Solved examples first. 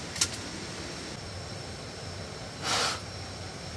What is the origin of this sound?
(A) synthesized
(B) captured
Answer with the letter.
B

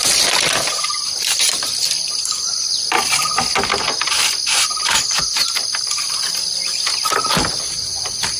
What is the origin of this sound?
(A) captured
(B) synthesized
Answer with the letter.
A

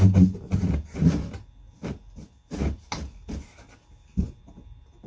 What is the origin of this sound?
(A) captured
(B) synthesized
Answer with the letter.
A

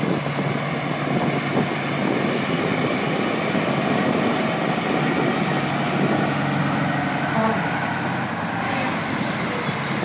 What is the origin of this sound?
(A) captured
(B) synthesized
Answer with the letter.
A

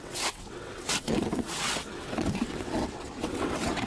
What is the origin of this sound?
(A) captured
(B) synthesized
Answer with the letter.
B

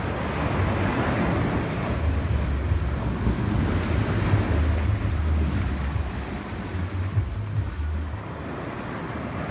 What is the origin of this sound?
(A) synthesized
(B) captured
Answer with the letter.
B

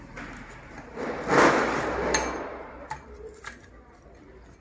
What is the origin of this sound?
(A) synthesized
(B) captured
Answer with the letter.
B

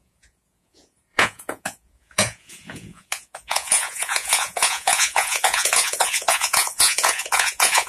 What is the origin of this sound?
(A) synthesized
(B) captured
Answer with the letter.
A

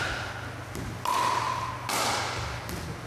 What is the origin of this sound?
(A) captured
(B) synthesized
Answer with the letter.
A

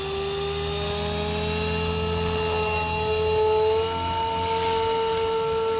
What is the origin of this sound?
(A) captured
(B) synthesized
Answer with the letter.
A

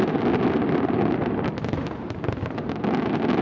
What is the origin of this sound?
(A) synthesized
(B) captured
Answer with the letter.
B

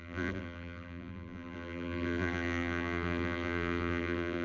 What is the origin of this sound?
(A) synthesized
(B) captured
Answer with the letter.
A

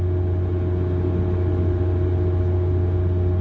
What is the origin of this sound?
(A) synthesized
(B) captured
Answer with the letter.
B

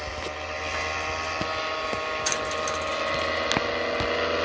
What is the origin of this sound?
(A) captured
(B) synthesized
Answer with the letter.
A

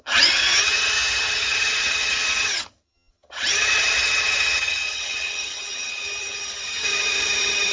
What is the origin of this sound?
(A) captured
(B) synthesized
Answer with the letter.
B